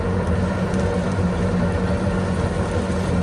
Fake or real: real